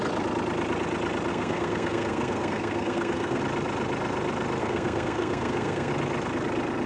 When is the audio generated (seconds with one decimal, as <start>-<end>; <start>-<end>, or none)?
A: 1.3-3.4; 4.6-5.9